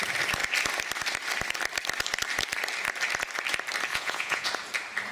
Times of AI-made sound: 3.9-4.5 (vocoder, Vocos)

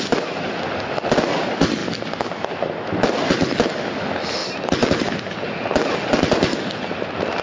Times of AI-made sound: none

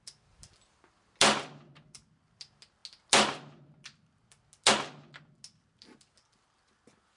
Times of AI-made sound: none

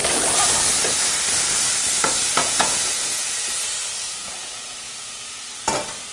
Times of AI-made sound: 2.4-3.4 (vocoder, Vocos); 4.2-5.4